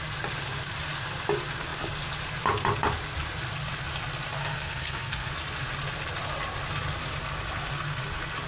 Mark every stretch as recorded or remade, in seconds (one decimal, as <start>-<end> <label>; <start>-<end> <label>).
0.0-4.4 recorded; 4.4-5.3 remade; 5.3-8.5 recorded